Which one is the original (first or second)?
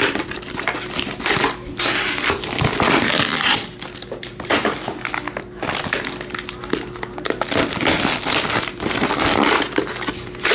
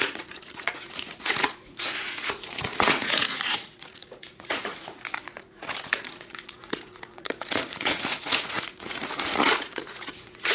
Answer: first